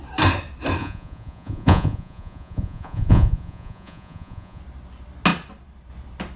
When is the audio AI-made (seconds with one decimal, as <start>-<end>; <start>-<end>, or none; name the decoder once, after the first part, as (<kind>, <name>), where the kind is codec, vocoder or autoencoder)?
0.8-4.6 (vocoder, Vocos)